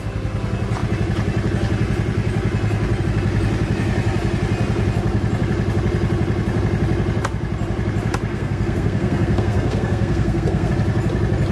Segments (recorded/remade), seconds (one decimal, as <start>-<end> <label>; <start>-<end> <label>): 0.0-8.3 recorded; 8.3-10.7 remade; 10.7-11.5 recorded